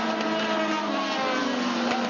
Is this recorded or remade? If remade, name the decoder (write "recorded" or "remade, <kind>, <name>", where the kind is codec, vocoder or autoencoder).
recorded